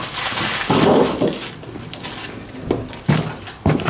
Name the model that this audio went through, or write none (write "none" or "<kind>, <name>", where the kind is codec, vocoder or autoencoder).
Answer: none